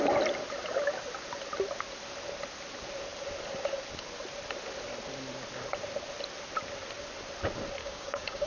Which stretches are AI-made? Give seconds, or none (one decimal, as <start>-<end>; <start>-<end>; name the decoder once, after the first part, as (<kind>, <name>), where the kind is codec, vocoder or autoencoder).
7.8-8.5 (codec, DAC)